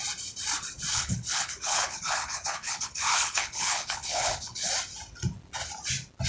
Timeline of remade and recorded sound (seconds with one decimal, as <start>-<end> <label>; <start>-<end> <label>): 0.0-0.9 recorded; 0.9-4.7 remade; 4.7-6.3 recorded